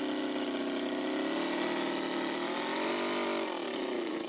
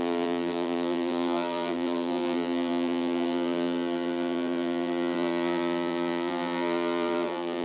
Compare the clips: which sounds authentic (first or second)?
first